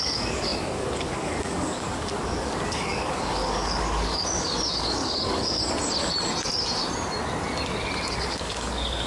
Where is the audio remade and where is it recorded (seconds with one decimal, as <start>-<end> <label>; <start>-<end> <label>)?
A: 0.0-5.6 remade; 5.6-8.1 recorded; 8.1-9.1 remade